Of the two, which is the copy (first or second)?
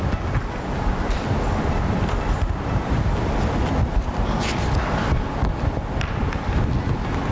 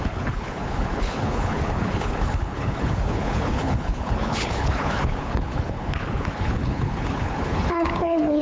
second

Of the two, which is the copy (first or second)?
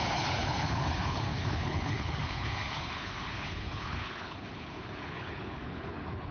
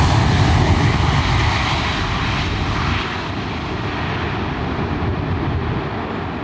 first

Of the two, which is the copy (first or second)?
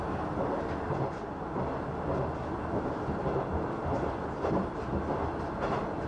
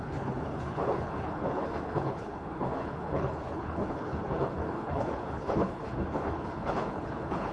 second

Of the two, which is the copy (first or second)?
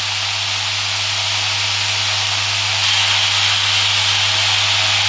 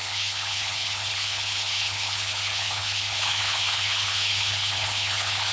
second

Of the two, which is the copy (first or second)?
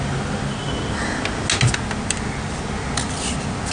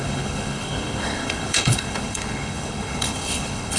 second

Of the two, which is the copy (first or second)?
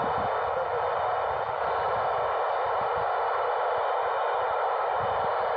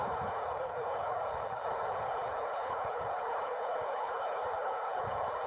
second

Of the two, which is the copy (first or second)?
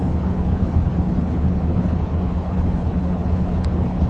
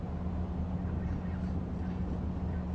first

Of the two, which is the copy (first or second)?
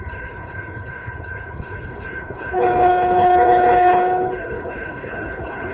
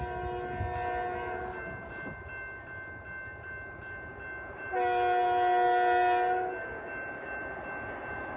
first